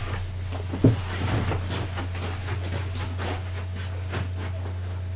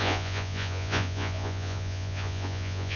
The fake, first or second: second